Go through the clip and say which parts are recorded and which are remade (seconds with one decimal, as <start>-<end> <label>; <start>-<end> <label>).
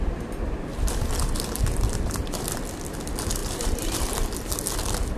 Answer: 0.0-3.4 recorded; 3.4-4.5 remade; 4.5-5.2 recorded